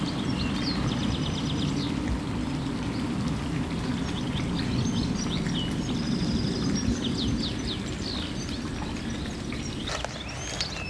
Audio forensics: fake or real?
real